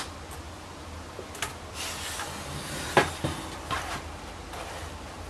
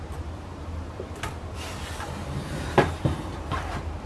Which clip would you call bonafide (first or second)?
first